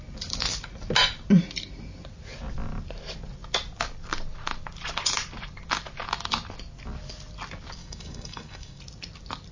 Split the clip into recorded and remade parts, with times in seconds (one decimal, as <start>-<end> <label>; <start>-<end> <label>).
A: 0.0-7.8 recorded; 7.8-8.8 remade; 8.8-9.5 recorded